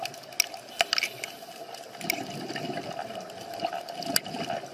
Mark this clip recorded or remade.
recorded